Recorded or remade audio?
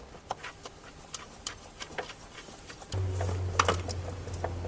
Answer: recorded